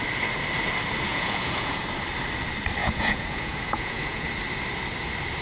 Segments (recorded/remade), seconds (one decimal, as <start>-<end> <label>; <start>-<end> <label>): 0.0-1.1 recorded; 1.1-1.8 remade; 1.8-2.8 recorded; 2.8-4.3 remade; 4.3-5.4 recorded